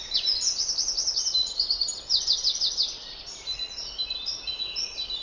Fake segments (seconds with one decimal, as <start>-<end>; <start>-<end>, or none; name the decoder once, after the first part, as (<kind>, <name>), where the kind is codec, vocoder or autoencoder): none